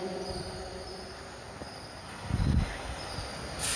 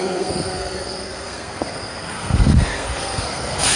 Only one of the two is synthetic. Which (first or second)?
second